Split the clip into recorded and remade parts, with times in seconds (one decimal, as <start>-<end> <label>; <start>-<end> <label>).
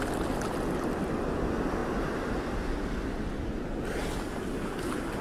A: 0.0-5.2 recorded